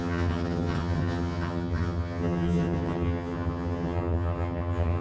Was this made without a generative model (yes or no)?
no